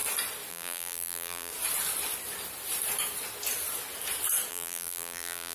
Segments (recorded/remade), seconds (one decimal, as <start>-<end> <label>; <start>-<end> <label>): 0.0-0.5 recorded; 0.5-1.5 remade; 1.5-4.5 recorded; 4.5-5.5 remade